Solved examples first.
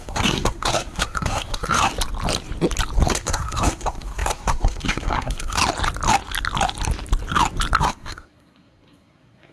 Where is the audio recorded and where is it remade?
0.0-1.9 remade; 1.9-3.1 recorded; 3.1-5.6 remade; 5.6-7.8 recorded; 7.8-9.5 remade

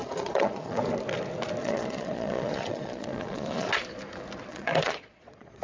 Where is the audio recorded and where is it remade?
0.0-0.8 remade; 0.8-1.6 recorded; 1.6-3.7 remade; 3.7-4.5 recorded; 4.5-5.6 remade

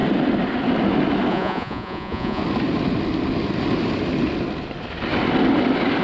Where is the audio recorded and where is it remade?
0.0-1.3 recorded; 1.3-2.4 remade; 2.4-6.0 recorded

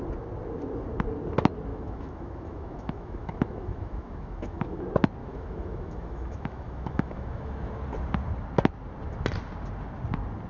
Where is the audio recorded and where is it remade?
0.0-1.7 recorded; 1.7-4.8 remade; 4.8-5.2 recorded; 5.2-7.5 remade; 7.5-10.5 recorded

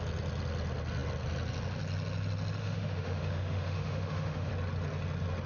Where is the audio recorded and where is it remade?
0.0-2.6 recorded; 2.6-4.5 remade; 4.5-5.5 recorded